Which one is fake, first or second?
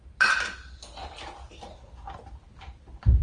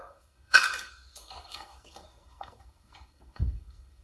second